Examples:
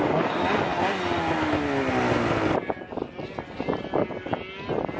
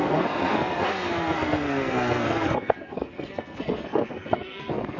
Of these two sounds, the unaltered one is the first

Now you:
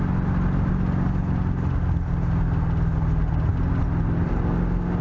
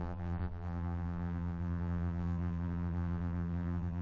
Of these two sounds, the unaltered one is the first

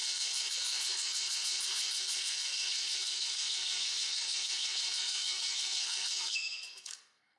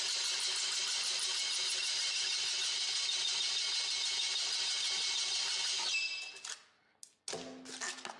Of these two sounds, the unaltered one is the second